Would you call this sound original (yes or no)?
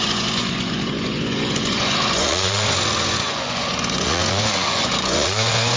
no